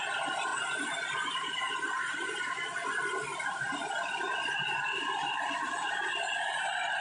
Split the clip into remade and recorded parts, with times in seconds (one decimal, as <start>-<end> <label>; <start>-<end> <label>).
0.0-0.5 remade; 0.5-1.3 recorded; 1.3-3.3 remade; 3.3-4.7 recorded; 4.7-7.0 remade